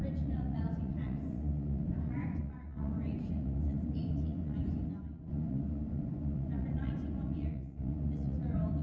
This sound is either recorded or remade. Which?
remade